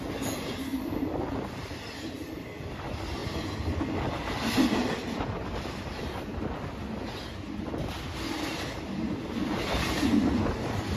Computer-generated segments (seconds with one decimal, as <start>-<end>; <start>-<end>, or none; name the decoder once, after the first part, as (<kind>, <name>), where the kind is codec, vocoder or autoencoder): 0.7-2.8 (vocoder, BigVGAN v2)

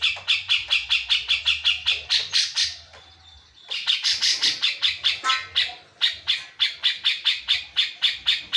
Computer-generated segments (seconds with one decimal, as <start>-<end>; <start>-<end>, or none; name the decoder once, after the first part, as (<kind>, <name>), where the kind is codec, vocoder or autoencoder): 1.8-5.3 (vocoder, BigVGAN v2); 7.1-7.6

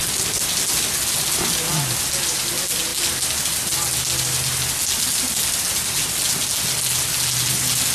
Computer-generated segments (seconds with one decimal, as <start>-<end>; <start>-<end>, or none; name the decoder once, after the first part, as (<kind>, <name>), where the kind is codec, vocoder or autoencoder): none